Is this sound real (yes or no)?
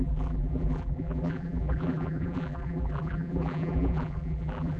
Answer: no